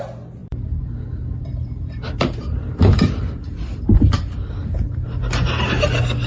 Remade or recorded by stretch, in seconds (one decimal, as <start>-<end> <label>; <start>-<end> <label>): 0.0-0.4 recorded; 0.4-3.2 remade; 3.2-6.3 recorded